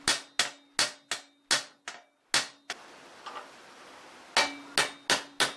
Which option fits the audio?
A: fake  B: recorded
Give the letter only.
B